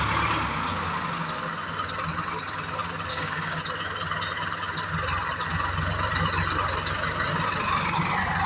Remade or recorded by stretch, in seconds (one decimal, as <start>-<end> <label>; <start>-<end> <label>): 0.0-3.1 recorded; 3.1-3.6 remade; 3.6-8.5 recorded